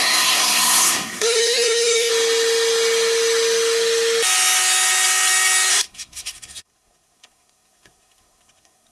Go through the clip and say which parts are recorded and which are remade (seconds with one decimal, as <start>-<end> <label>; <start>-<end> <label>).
0.0-2.1 remade; 2.1-5.7 recorded; 5.7-8.9 remade